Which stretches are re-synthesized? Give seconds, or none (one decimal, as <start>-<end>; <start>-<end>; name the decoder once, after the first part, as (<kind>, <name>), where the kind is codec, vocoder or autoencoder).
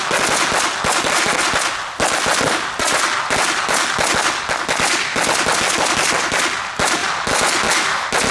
none